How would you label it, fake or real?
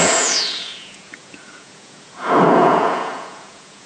fake